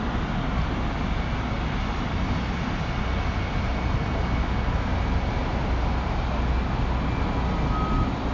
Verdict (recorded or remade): recorded